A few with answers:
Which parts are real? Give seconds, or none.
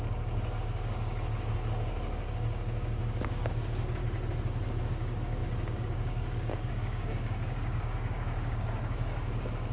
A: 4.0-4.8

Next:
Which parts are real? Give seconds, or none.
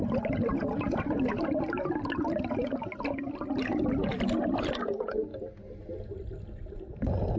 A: 0.0-7.4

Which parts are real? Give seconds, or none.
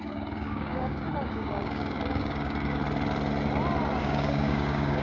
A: 2.8-4.0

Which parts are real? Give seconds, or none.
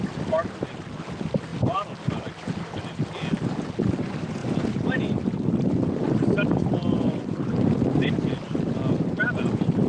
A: 0.0-9.9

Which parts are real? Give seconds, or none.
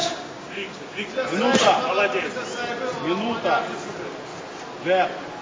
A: 1.1-5.4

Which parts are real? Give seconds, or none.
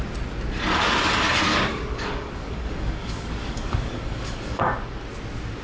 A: 0.0-1.5; 4.7-5.6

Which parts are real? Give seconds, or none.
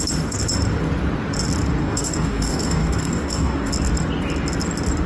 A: 0.0-1.8; 3.7-5.1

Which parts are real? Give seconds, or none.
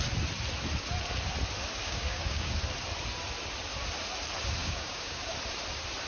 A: 0.0-1.8; 2.5-4.6; 5.2-6.1